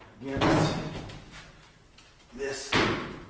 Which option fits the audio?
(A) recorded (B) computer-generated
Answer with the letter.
A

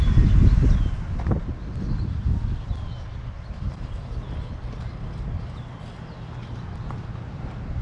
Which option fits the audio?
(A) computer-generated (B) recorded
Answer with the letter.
B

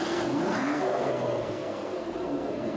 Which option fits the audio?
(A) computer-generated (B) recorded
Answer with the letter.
A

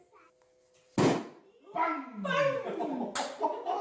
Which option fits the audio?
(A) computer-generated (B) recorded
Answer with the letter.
B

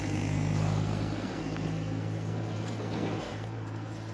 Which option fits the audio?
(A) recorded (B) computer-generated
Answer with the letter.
B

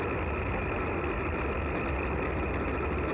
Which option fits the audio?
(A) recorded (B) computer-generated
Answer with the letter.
A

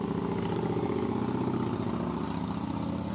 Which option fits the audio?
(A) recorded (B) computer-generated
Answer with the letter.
A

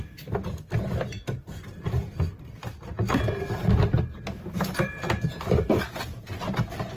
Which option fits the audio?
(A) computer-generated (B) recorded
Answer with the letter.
B